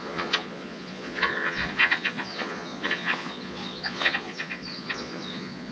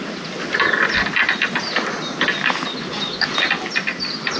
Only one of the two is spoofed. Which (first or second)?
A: first